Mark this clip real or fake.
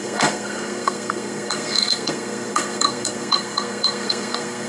fake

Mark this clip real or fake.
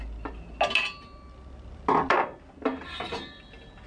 real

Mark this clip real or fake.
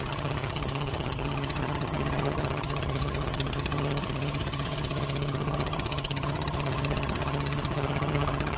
fake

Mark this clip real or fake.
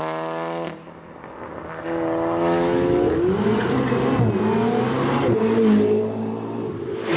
real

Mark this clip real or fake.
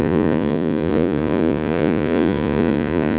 fake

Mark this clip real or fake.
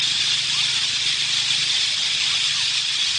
real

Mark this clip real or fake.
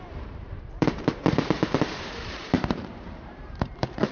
fake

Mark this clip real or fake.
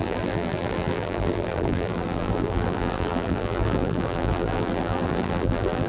fake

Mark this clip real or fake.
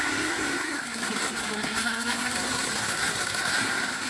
fake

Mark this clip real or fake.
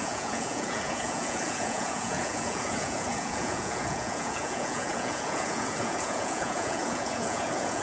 fake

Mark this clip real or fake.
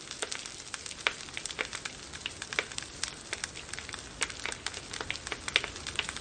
real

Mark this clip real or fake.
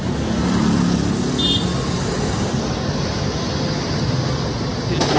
real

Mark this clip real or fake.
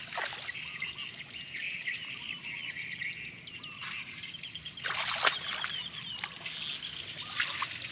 real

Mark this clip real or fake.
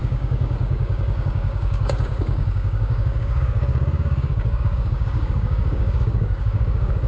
fake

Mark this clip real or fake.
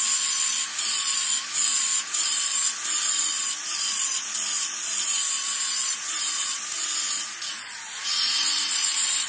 fake